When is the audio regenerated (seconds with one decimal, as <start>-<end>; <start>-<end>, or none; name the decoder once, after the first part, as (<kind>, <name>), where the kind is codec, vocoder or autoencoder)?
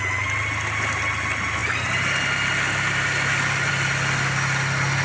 none